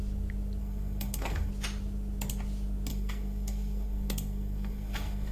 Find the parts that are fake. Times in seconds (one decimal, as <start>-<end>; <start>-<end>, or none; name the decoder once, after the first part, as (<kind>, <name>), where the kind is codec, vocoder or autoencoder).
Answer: 0.6-1.5 (codec, SNAC); 2.9-5.3